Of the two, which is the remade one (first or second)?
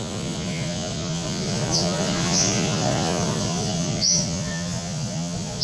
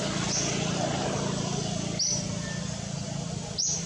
first